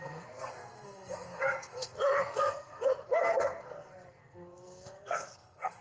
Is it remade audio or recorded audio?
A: remade